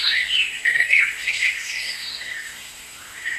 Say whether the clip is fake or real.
fake